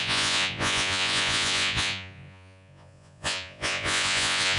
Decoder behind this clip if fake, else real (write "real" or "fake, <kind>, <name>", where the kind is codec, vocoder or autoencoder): fake, vocoder, Vocos